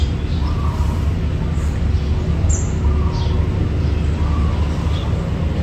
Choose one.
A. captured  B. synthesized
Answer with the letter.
A